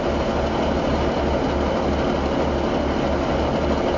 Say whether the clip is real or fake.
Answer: real